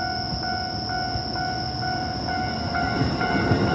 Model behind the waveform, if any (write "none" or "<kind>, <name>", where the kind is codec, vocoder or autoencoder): none